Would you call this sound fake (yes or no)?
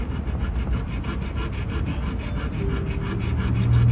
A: no